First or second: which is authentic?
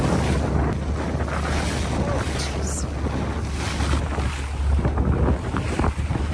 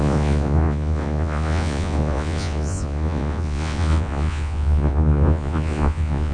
first